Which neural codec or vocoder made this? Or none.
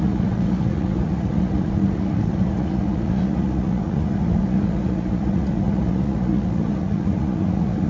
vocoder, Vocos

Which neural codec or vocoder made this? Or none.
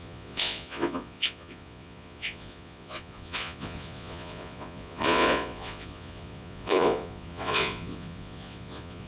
vocoder, Vocos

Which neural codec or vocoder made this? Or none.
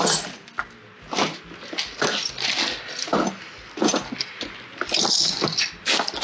none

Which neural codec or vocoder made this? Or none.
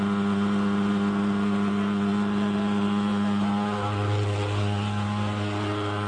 none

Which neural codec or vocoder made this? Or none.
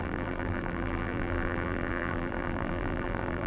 vocoder, BigVGAN v2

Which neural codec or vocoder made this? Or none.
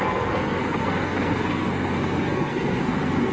codec, SNAC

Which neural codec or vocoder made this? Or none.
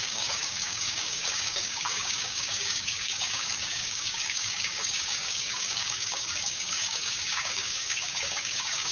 codec, DAC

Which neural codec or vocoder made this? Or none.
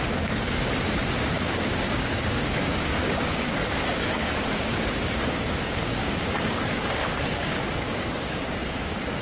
codec, DAC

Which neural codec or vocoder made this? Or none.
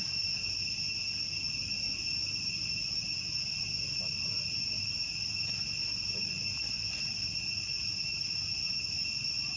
none